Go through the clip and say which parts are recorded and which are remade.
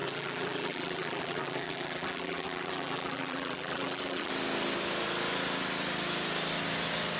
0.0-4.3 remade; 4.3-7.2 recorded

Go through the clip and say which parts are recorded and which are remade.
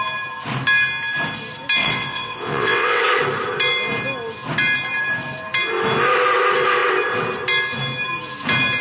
0.0-1.8 recorded; 1.8-3.0 remade; 3.0-8.8 recorded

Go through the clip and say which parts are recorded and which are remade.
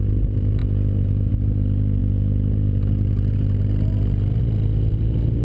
0.0-2.0 recorded; 2.0-4.4 remade; 4.4-5.4 recorded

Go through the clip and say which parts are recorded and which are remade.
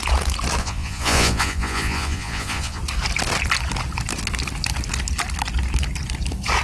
0.0-0.6 recorded; 0.6-2.8 remade; 2.8-6.6 recorded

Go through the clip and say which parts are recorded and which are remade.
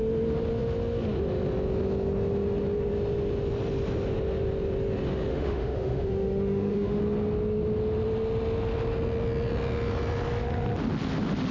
0.0-5.3 recorded; 5.3-7.0 remade; 7.0-11.5 recorded